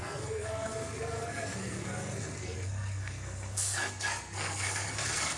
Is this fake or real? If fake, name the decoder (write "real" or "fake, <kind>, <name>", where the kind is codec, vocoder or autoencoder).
fake, codec, SNAC